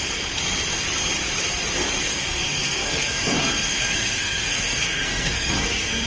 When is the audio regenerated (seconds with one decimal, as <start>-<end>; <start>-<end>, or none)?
2.0-6.1